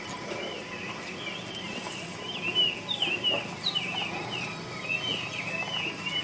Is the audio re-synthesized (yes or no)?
no